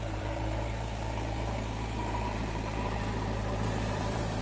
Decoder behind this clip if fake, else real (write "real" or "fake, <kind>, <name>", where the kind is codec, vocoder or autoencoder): fake, vocoder, BigVGAN v2